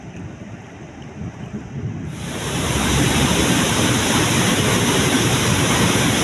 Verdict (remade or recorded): remade